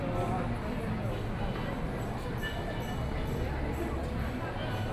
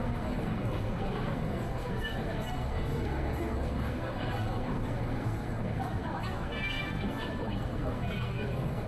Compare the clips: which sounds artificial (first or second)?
second